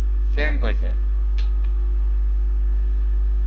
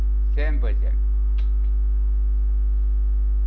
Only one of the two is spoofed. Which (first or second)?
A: first